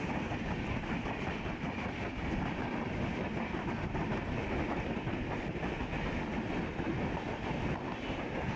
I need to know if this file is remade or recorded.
remade